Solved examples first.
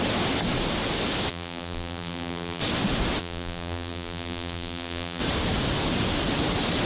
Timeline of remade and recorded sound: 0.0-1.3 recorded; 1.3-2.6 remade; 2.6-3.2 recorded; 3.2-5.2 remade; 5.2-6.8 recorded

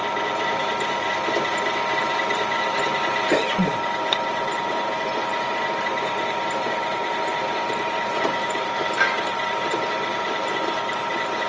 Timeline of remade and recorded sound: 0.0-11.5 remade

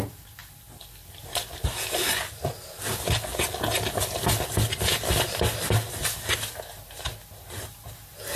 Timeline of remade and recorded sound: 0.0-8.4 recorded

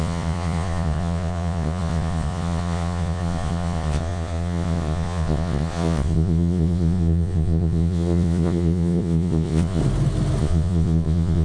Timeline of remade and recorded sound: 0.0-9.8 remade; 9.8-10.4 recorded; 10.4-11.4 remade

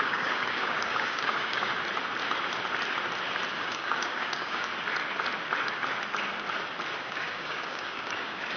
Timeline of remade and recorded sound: 0.0-1.7 remade; 1.7-3.6 recorded; 3.6-4.7 remade; 4.7-7.0 recorded; 7.0-8.6 remade

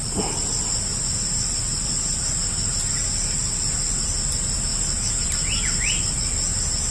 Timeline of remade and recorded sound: 0.0-6.9 recorded

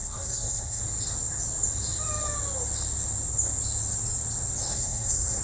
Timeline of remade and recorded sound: 0.0-0.8 remade; 0.8-4.7 recorded; 4.7-5.4 remade